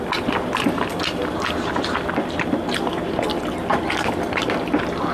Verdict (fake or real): real